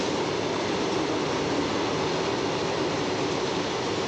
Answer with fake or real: real